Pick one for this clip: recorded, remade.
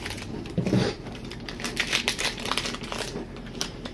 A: remade